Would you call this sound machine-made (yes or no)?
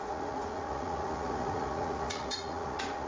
yes